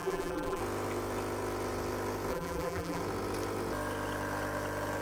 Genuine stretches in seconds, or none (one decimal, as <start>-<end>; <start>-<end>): 0.6-2.3; 3.0-5.0